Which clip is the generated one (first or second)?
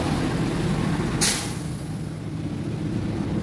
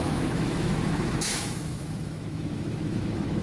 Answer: second